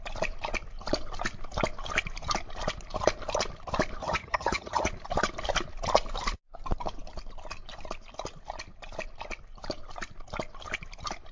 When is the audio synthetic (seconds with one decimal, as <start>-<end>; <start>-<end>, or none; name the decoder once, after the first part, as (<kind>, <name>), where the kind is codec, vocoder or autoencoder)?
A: 4.0-4.9 (vocoder, HiFi-GAN)

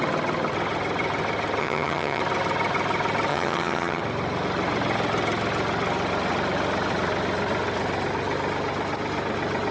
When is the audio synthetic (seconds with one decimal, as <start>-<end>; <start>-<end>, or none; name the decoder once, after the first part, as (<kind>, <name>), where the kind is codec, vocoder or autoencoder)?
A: 1.6-2.2 (vocoder, HiFi-GAN); 3.3-4.0